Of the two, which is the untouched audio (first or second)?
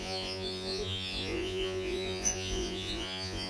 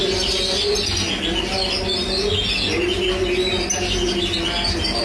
second